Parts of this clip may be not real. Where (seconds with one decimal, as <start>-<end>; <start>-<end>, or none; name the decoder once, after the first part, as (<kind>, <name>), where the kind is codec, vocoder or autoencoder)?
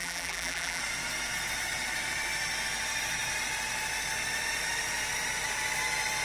0.0-0.8 (vocoder, BigVGAN v2)